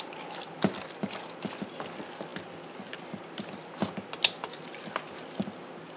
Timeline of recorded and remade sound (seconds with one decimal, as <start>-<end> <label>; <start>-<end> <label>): 0.0-6.0 recorded